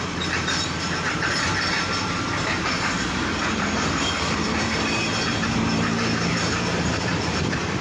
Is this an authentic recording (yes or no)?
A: no